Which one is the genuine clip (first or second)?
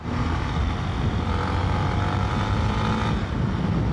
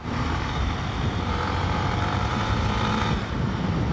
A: first